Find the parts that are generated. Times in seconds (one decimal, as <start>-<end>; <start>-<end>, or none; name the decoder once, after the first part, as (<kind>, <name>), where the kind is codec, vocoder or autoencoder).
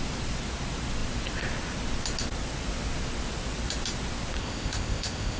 4.4-5.4 (codec, ZipCodec)